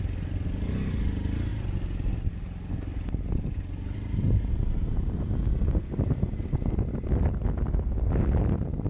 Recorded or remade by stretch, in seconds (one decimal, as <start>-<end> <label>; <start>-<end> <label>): 0.0-8.9 recorded